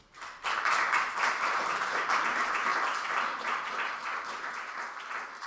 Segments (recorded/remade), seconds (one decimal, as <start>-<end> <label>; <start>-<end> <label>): 0.0-5.5 recorded